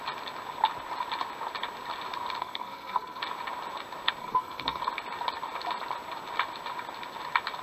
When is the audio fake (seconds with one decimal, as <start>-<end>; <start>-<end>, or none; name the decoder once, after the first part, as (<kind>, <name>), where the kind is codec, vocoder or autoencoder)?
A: 2.4-3.2 (codec, SNAC); 4.2-4.8

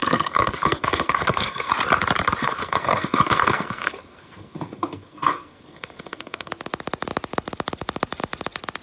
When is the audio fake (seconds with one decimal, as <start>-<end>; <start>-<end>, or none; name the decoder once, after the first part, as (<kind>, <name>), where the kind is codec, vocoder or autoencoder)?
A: 0.0-1.7 (codec, SNAC); 2.4-6.5